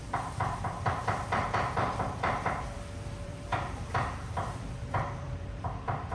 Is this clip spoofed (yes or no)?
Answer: yes